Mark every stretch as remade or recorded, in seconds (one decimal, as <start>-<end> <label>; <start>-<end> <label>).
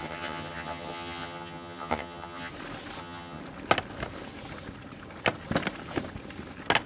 0.0-2.5 remade; 2.5-3.0 recorded; 3.0-3.4 remade; 3.4-6.9 recorded